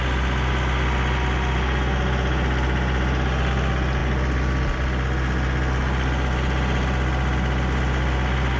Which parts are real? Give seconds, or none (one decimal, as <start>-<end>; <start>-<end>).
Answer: 0.0-8.6

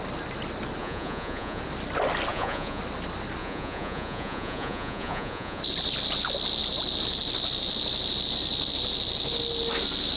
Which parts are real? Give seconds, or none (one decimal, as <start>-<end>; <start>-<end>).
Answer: 0.0-0.8; 1.6-2.3; 2.8-3.4; 5.6-10.2

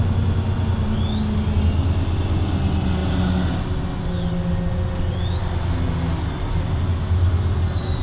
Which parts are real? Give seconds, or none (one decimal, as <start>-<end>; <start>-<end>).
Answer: 0.0-8.0